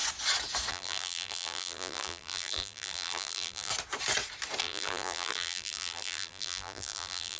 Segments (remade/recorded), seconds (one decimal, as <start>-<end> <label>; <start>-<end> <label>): 0.0-0.7 recorded; 0.7-3.7 remade; 3.7-4.6 recorded; 4.6-7.4 remade